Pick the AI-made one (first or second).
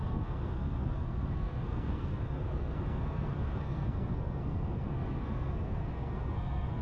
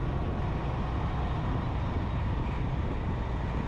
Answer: first